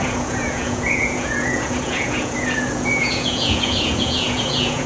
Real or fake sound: fake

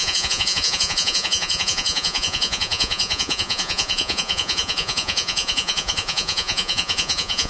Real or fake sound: fake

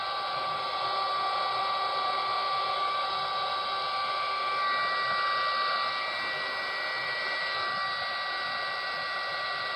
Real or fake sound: real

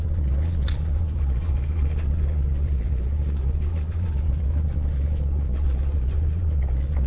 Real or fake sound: fake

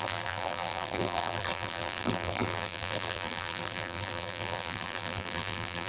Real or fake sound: fake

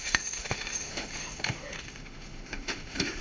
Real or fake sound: fake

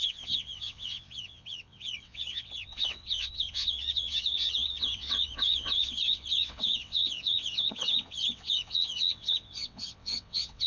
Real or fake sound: fake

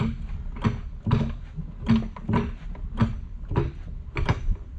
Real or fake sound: real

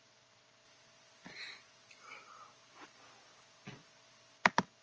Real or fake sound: real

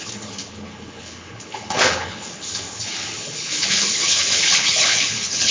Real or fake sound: fake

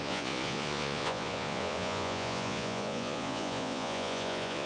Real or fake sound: fake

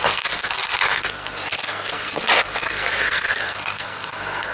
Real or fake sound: fake